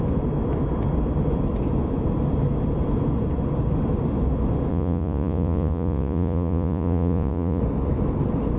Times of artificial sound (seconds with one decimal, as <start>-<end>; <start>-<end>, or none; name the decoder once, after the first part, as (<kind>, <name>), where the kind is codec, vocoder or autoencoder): 4.7-7.6 (vocoder, Vocos)